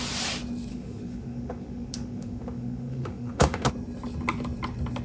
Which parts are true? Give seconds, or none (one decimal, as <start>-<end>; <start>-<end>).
0.0-0.7; 3.7-5.0